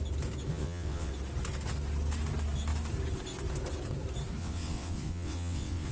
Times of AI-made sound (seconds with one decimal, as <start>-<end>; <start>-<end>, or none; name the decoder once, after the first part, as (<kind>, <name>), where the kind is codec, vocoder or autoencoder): 0.5-1.1 (vocoder, WaveNeXt); 4.4-5.9